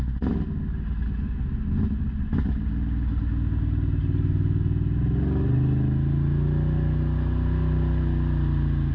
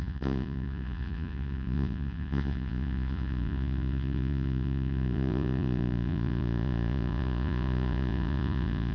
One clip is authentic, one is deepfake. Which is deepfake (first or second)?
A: second